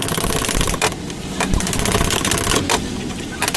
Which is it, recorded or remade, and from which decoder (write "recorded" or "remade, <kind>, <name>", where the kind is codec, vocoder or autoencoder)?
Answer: recorded